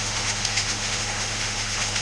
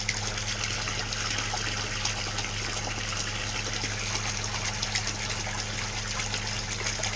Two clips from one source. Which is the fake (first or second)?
first